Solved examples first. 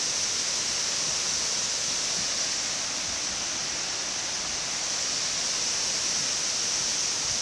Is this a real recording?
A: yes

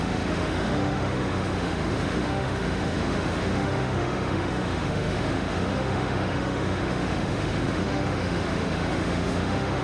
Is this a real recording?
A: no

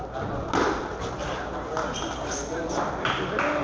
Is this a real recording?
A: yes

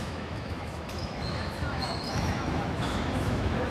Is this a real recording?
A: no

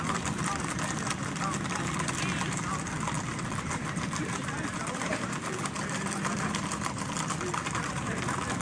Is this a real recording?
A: no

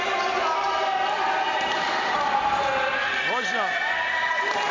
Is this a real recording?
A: yes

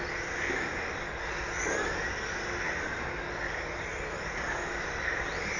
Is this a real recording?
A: yes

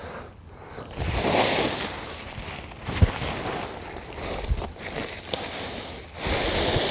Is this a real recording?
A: yes